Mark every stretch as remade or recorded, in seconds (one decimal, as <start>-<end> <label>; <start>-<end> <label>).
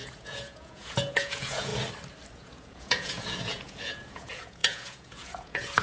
0.0-1.7 remade; 1.7-2.3 recorded; 2.3-5.8 remade